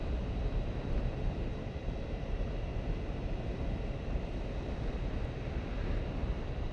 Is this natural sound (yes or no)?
no